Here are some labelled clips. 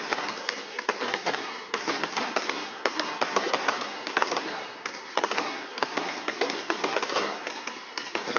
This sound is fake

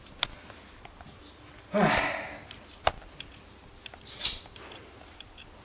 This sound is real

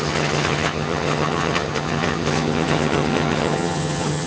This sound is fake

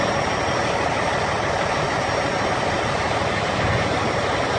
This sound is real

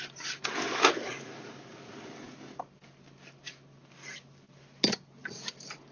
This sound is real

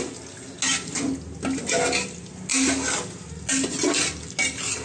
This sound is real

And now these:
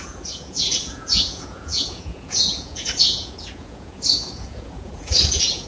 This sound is fake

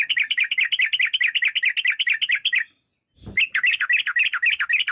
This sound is real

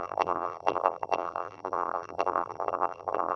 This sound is fake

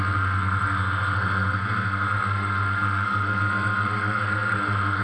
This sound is fake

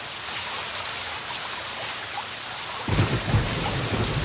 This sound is real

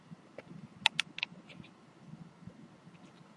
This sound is real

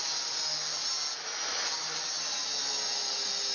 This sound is real